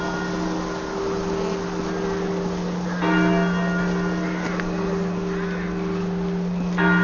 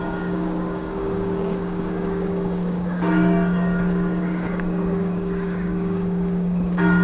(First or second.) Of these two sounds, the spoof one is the second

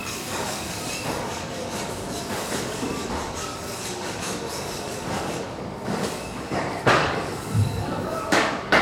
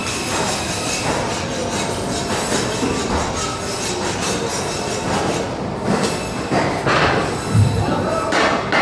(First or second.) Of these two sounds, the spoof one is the first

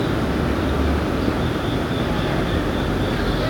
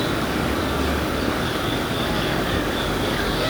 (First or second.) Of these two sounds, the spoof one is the second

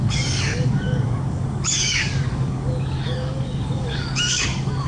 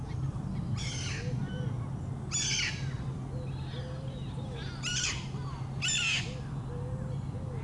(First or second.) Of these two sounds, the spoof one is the first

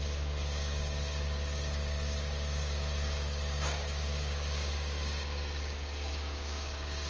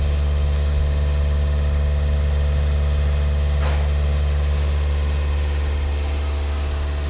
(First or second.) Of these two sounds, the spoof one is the first